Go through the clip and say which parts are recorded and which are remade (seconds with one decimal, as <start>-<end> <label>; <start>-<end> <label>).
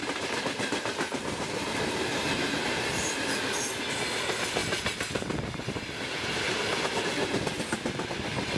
0.0-3.0 remade; 3.0-8.6 recorded